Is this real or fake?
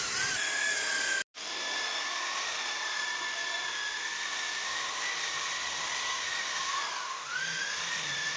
real